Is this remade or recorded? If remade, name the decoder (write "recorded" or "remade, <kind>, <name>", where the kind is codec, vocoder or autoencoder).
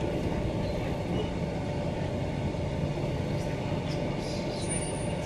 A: recorded